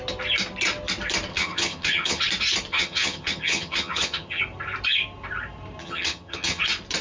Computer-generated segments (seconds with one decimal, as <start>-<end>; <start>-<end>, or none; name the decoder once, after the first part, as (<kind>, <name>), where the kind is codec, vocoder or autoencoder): 1.3-2.2 (vocoder, HiFi-GAN); 2.7-4.4; 5.8-6.6